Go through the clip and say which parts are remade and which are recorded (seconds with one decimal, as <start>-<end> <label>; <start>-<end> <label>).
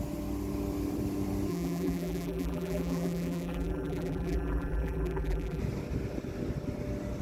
0.0-1.5 recorded; 1.5-5.6 remade; 5.6-7.2 recorded